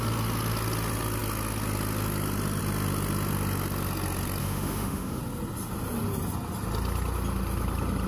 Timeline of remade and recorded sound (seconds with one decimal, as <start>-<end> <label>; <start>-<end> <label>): 0.0-4.4 recorded; 4.4-5.2 remade; 5.2-8.1 recorded